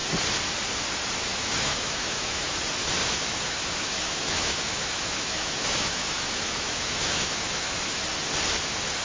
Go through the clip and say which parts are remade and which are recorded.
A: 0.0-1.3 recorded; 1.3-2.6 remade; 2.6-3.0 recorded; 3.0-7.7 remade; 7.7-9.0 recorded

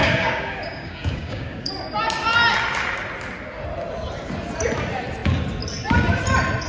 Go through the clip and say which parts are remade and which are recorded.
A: 0.0-1.7 remade; 1.7-6.7 recorded

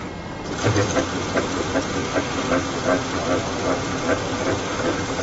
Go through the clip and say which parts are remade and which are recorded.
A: 0.0-2.0 remade; 2.0-2.8 recorded; 2.8-3.2 remade; 3.2-3.8 recorded; 3.8-5.2 remade

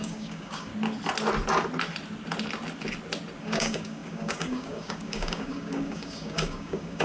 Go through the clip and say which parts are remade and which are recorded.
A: 0.0-0.7 remade; 0.7-3.4 recorded; 3.4-7.0 remade